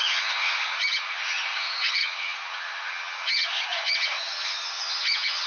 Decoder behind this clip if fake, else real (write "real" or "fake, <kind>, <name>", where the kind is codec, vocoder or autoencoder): fake, vocoder, HiFi-GAN